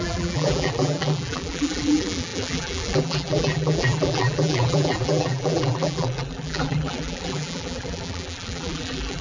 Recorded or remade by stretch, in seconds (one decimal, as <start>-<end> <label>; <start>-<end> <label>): 0.0-9.2 remade